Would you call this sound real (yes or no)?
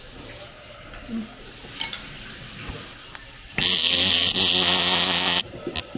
yes